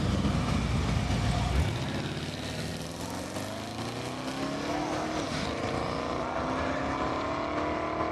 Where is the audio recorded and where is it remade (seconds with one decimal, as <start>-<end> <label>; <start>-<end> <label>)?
0.0-8.1 recorded

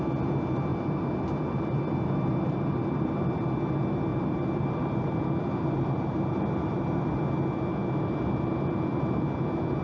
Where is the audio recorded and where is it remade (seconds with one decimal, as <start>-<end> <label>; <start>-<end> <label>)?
0.0-0.7 recorded; 0.7-3.2 remade; 3.2-4.1 recorded; 4.1-7.2 remade; 7.2-9.8 recorded

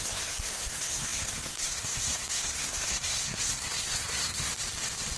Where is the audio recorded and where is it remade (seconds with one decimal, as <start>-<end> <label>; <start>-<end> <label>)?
0.0-4.5 remade; 4.5-5.2 recorded

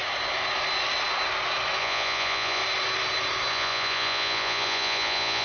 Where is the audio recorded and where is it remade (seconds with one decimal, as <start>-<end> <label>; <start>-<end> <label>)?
0.0-1.8 recorded; 1.8-2.6 remade; 2.6-3.5 recorded; 3.5-5.4 remade

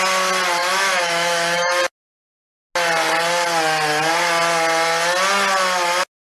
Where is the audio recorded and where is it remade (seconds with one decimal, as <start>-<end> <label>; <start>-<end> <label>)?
0.0-0.6 recorded; 0.6-1.8 remade; 1.8-6.2 recorded